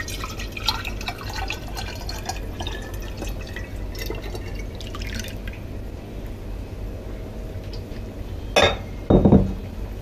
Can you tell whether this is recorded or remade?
recorded